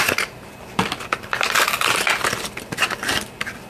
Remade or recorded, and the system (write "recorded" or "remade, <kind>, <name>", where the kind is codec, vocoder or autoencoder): remade, vocoder, BigVGAN v2